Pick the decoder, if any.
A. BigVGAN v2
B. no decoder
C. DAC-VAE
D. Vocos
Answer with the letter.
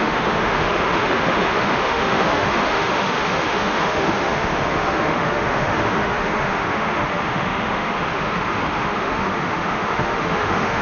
C